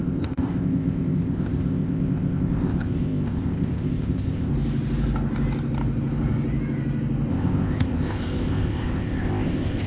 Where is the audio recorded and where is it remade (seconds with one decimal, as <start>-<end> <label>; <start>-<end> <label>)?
0.0-4.5 remade; 4.5-7.3 recorded; 7.3-9.9 remade